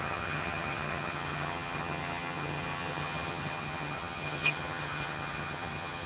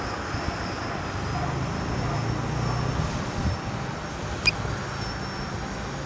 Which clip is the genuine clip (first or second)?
second